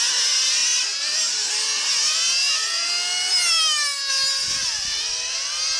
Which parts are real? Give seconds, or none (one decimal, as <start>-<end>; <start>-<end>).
0.0-5.8